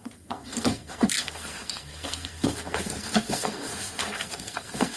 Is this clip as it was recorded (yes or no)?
no